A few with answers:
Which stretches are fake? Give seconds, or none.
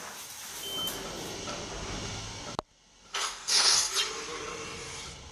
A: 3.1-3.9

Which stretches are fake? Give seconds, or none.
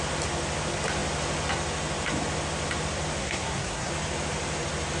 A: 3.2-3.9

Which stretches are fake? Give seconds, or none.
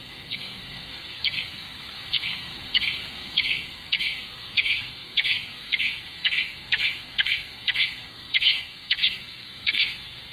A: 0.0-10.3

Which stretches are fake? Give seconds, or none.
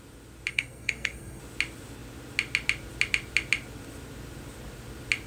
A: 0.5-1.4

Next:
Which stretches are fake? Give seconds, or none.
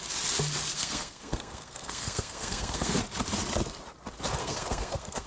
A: 0.7-3.0; 4.4-5.3